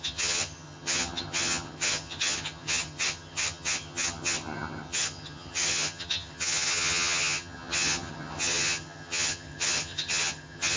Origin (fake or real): fake